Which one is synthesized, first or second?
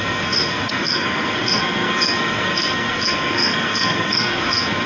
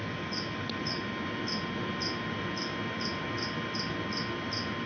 first